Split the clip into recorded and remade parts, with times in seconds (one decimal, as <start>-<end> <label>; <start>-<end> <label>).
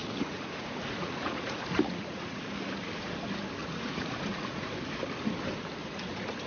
0.0-2.4 remade; 2.4-3.6 recorded; 3.6-4.7 remade; 4.7-5.8 recorded; 5.8-6.5 remade